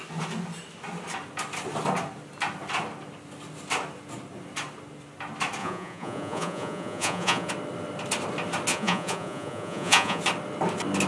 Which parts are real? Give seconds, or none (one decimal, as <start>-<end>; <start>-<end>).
0.0-5.6; 7.5-8.7; 10.2-11.1